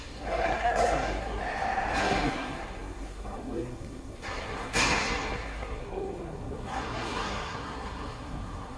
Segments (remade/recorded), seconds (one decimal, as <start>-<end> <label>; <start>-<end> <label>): 0.0-1.4 remade; 1.4-2.0 recorded; 2.0-8.8 remade